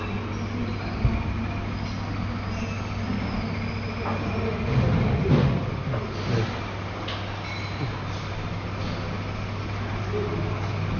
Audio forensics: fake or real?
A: real